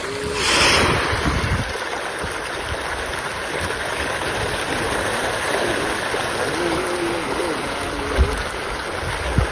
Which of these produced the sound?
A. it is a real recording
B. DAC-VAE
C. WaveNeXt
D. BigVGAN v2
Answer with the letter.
A